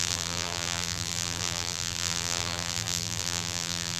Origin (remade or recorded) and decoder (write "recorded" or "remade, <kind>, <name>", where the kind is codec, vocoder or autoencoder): remade, vocoder, BigVGAN v2